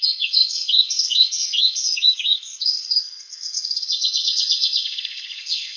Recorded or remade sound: remade